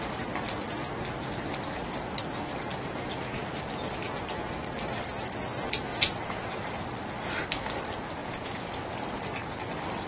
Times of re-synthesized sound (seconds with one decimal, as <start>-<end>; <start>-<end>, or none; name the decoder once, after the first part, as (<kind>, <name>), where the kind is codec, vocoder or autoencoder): 2.7-3.4 (vocoder, Vocos); 5.9-6.5; 8.2-8.7